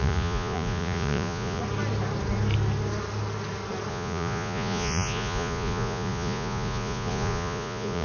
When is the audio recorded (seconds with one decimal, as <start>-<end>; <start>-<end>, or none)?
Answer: 1.6-3.9